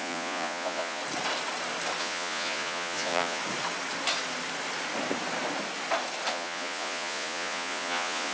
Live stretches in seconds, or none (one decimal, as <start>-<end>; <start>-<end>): 1.0-2.0; 3.4-6.3

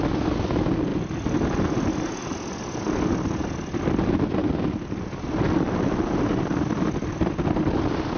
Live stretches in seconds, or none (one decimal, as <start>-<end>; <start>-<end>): 0.0-8.2

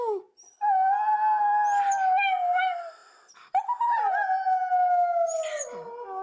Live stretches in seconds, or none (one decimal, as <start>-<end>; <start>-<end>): 0.0-6.2